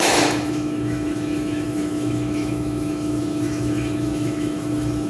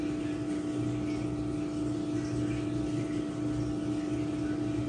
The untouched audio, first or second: second